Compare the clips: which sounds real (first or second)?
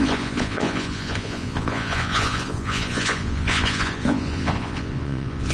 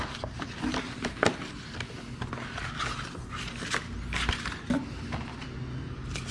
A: second